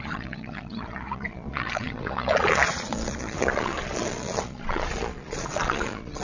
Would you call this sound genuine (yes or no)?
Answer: no